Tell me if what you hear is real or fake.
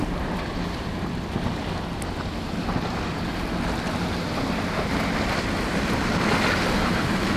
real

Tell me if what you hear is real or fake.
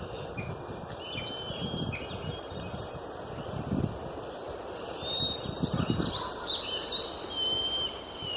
real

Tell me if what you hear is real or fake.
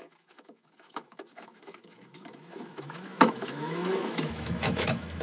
fake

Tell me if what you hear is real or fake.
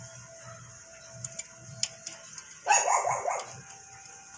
real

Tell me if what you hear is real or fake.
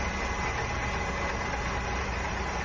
real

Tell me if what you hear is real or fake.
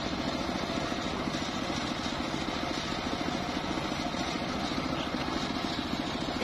real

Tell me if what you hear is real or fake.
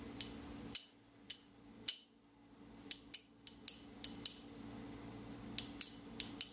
real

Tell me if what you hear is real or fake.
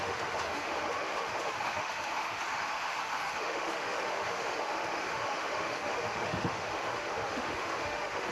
fake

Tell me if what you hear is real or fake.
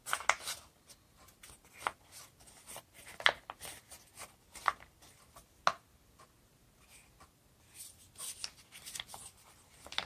real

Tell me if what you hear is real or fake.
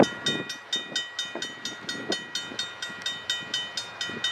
real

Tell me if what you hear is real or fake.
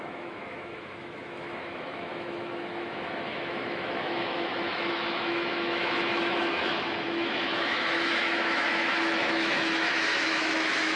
fake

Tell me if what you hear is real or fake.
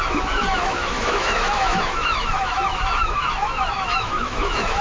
fake